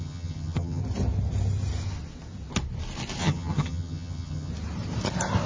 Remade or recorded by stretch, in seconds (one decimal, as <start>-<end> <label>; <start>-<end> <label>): 0.0-0.8 remade; 0.8-3.2 recorded; 3.2-4.5 remade; 4.5-5.5 recorded